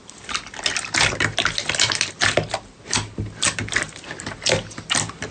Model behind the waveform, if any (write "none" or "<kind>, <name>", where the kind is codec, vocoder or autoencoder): none